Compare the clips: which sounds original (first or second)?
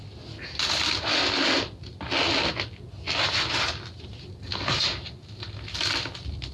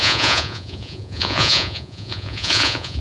first